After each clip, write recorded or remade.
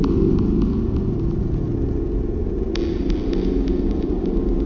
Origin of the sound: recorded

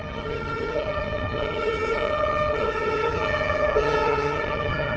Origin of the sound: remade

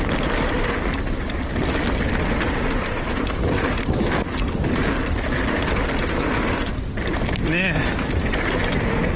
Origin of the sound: recorded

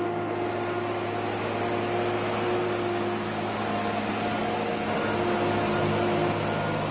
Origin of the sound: recorded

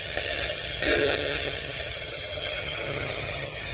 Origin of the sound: remade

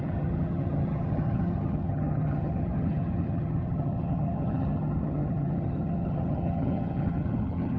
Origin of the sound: remade